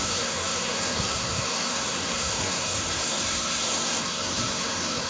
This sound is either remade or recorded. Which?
remade